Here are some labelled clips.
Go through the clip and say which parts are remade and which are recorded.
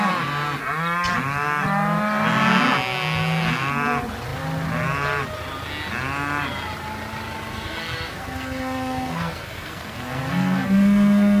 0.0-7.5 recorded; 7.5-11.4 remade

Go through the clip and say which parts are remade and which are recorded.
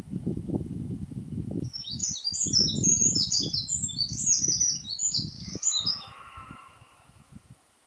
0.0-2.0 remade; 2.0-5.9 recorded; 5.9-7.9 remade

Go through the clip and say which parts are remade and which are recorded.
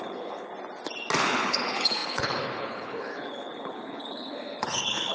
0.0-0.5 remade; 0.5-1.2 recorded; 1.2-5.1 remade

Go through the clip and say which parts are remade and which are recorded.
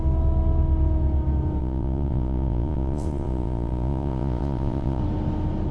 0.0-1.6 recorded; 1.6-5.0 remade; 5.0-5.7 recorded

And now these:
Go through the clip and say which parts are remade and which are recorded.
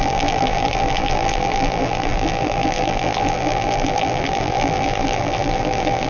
0.0-6.1 remade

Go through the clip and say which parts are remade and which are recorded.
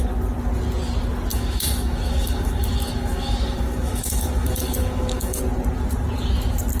0.0-1.3 recorded; 1.3-5.4 remade; 5.4-6.8 recorded